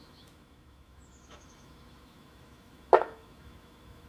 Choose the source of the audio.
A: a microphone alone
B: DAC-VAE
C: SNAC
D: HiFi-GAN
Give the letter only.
B